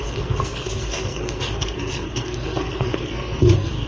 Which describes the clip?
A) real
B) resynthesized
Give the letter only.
B